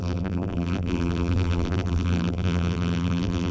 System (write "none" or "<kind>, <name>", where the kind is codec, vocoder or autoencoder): vocoder, BigVGAN v2